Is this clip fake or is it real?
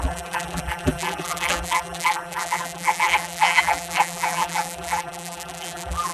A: fake